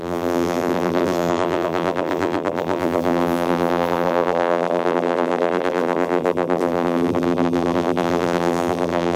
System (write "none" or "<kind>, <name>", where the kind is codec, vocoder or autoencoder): vocoder, BigVGAN v2